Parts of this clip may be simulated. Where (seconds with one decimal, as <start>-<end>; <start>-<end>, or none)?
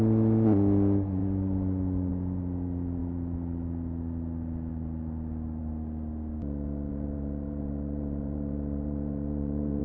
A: 6.9-9.8